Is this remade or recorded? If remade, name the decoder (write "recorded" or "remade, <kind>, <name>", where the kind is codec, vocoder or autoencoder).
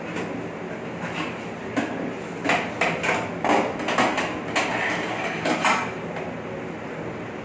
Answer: recorded